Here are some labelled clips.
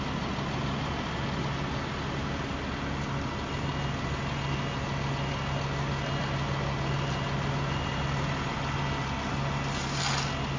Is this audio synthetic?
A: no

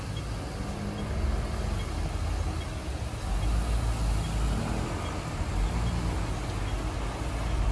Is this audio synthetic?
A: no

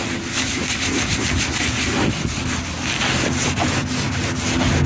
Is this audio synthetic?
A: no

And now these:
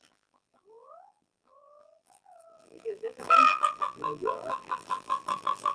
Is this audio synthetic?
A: yes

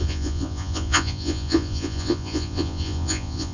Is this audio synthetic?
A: yes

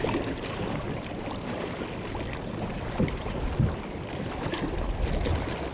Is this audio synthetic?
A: no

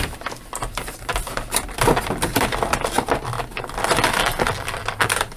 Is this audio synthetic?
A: yes